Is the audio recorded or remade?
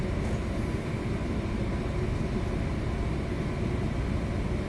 recorded